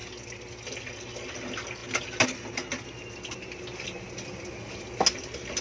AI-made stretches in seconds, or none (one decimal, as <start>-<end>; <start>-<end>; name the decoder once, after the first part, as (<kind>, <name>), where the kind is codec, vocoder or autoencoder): none